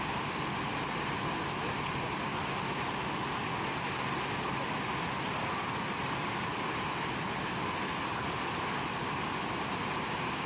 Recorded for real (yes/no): yes